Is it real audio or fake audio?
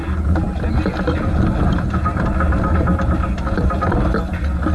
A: real